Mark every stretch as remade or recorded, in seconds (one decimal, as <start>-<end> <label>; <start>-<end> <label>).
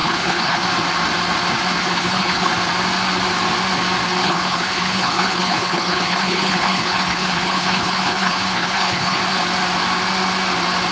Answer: 0.0-0.6 remade; 0.6-1.8 recorded; 1.8-2.5 remade; 2.5-4.2 recorded; 4.2-9.2 remade; 9.2-10.9 recorded